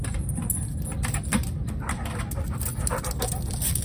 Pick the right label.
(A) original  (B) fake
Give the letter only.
A